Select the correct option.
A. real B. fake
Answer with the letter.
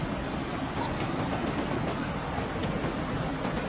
A